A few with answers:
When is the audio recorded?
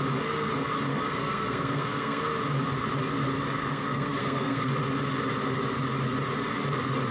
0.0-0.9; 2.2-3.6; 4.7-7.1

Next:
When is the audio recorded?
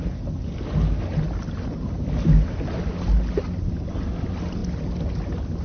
0.0-5.6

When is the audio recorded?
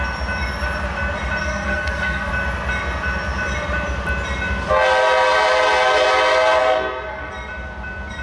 0.0-1.4; 2.3-6.6; 7.3-8.2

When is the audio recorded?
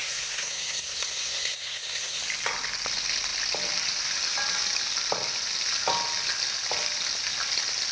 2.2-7.9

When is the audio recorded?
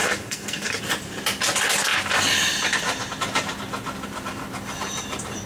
0.8-5.5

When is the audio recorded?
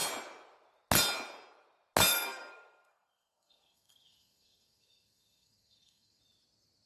0.0-2.1; 6.2-6.9